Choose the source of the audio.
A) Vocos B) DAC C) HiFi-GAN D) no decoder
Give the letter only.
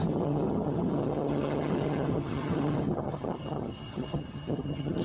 C